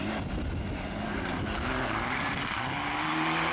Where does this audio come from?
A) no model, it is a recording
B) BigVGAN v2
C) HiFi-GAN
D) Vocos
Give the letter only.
A